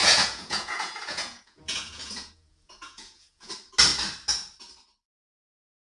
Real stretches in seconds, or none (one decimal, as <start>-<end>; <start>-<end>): 3.5-5.9